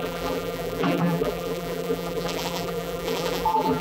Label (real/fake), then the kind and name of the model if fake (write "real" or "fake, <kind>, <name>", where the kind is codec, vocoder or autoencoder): fake, vocoder, BigVGAN v2